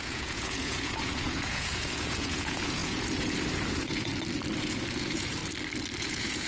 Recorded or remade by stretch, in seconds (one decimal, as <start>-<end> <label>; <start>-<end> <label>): 0.0-4.1 remade; 4.1-4.6 recorded; 4.6-5.4 remade; 5.4-6.0 recorded; 6.0-6.5 remade